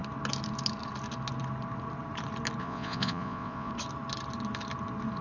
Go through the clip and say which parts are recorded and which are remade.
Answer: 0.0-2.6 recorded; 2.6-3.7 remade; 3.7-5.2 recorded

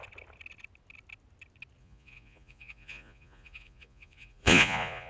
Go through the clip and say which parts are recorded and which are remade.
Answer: 0.0-1.8 recorded; 1.8-5.1 remade

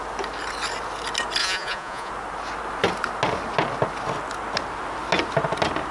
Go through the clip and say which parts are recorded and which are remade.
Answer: 0.0-1.4 recorded; 1.4-2.1 remade; 2.1-5.9 recorded

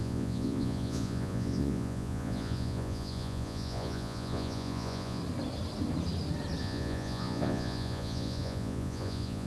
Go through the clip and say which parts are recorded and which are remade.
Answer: 0.0-5.2 remade; 5.2-6.6 recorded; 6.6-9.5 remade

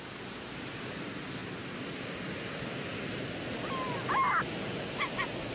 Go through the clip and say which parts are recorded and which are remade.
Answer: 0.0-5.5 recorded

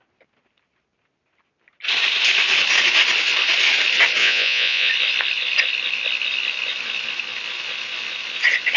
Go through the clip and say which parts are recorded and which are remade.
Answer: 0.0-4.2 recorded; 4.2-4.9 remade; 4.9-8.8 recorded

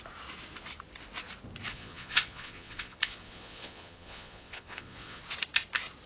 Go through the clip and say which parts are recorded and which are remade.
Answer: 0.0-1.7 recorded; 1.7-5.2 remade; 5.2-6.1 recorded

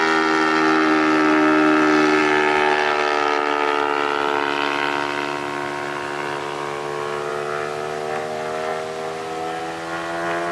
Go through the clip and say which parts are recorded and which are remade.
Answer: 0.0-10.5 recorded